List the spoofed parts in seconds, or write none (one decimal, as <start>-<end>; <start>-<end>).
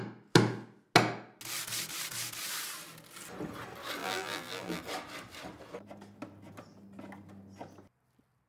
4.0-4.8